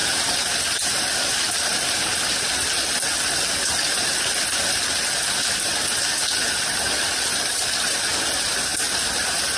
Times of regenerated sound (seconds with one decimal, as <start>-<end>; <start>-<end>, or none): none